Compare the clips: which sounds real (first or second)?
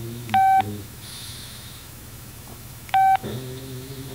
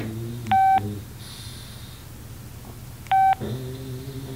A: second